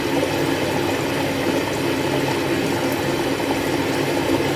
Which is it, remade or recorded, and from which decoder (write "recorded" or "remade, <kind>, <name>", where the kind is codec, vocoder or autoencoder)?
recorded